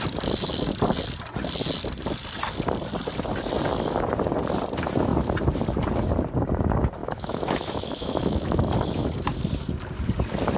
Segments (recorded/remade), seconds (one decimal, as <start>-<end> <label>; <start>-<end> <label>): 0.0-7.0 recorded; 7.0-8.7 remade; 8.7-10.6 recorded